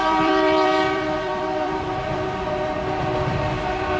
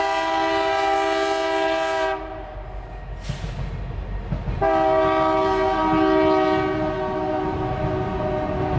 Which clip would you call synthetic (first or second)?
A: first